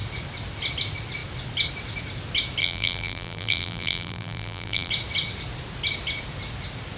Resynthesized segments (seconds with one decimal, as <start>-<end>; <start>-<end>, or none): 2.6-4.9